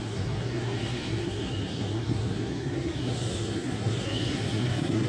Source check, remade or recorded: remade